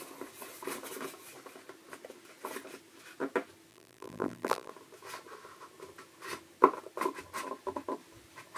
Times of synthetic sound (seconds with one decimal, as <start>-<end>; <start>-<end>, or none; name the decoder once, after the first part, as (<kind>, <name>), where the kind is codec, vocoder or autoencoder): 3.7-4.7 (vocoder, BigVGAN v2)